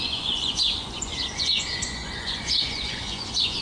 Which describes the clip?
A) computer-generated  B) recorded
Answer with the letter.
A